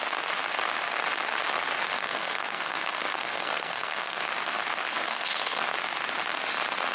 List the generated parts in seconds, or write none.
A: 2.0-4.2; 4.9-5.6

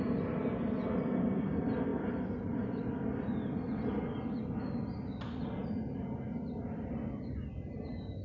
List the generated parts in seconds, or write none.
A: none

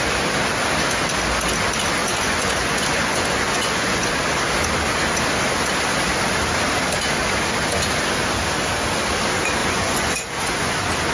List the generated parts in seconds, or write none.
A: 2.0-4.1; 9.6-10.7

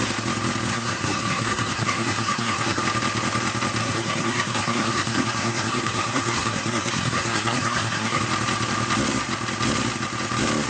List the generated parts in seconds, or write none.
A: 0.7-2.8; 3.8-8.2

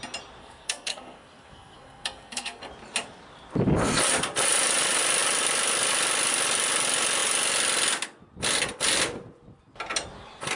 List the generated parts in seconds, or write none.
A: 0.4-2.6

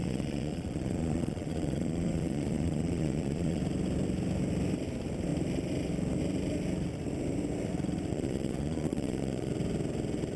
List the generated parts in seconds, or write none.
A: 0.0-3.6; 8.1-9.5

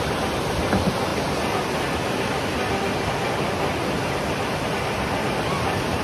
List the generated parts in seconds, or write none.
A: none